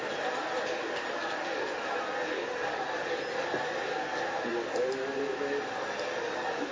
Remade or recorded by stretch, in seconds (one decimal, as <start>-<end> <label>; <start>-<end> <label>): 0.0-6.7 recorded